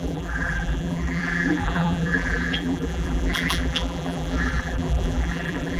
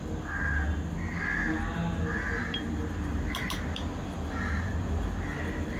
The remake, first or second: first